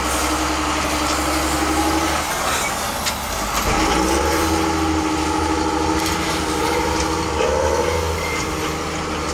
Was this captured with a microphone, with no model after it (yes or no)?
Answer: yes